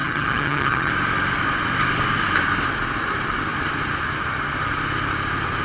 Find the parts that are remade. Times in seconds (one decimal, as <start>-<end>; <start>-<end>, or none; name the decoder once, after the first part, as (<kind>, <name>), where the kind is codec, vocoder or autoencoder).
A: 0.0-0.9 (vocoder, HiFi-GAN)